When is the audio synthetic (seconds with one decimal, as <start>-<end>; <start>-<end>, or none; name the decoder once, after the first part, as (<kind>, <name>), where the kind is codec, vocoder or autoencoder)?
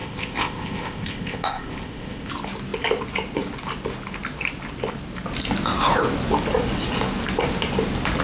0.0-2.3 (codec, ZipCodec)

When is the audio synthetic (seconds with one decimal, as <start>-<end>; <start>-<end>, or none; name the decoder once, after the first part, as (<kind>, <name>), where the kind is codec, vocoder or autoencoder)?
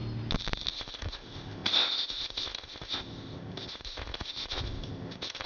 0.7-5.5 (codec, ZipCodec)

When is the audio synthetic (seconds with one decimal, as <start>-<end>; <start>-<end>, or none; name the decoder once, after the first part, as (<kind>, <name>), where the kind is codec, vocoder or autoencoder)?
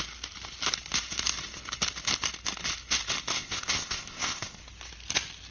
3.3-4.6 (codec, ZipCodec)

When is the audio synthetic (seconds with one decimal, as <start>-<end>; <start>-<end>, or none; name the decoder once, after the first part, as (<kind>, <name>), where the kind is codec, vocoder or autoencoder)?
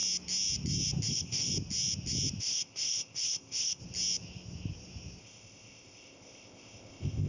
1.1-1.5 (codec, ZipCodec); 2.4-3.8; 5.2-7.3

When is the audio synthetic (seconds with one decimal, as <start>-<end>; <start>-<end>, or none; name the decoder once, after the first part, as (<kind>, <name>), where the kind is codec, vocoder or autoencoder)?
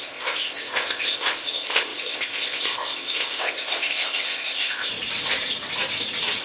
0.0-4.9 (codec, ZipCodec)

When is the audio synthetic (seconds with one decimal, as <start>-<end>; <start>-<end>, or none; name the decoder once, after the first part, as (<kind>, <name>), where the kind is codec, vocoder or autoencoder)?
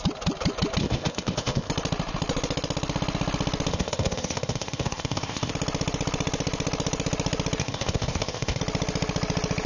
0.8-1.7 (codec, ZipCodec); 3.7-5.5; 7.6-8.6